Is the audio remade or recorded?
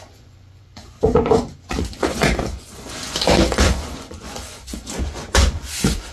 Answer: remade